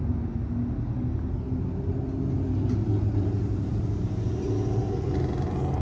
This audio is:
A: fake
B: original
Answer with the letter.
B